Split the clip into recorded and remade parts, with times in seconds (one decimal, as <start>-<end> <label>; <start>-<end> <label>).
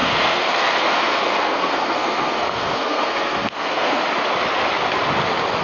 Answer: 0.0-4.0 remade; 4.0-5.6 recorded